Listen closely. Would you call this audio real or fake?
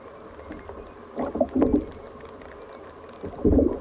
real